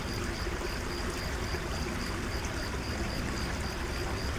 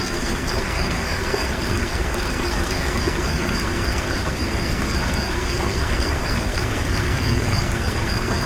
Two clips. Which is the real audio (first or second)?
first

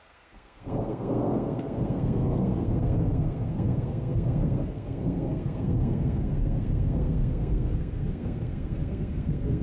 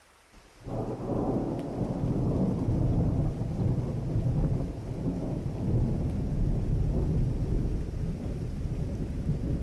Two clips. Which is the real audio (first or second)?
second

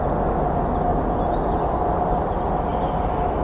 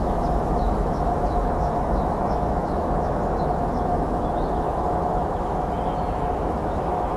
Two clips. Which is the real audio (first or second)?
first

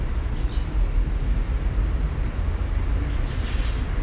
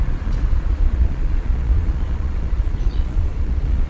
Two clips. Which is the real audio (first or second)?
first